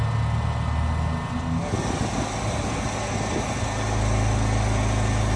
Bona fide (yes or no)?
yes